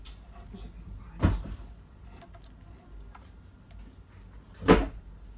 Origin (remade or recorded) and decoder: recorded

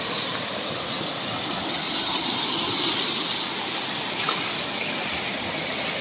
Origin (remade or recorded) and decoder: recorded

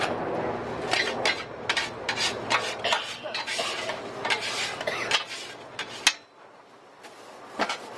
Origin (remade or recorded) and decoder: recorded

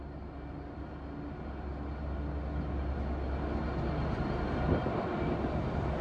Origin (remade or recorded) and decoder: recorded